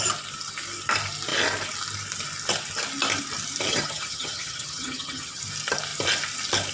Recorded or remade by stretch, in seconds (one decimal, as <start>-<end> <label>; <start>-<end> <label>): 0.0-3.7 recorded; 3.7-5.4 remade; 5.4-6.7 recorded